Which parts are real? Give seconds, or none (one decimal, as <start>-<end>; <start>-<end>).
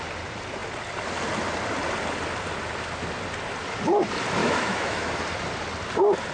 0.0-4.4; 5.2-6.3